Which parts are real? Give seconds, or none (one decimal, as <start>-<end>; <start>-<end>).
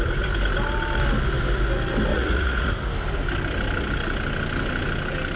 0.0-2.1; 2.7-5.4